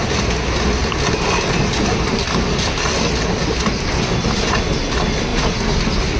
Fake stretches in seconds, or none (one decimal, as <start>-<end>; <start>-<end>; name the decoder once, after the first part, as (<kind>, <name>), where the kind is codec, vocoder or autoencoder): none